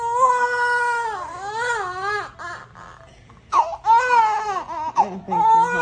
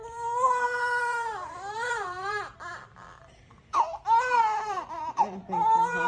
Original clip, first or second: first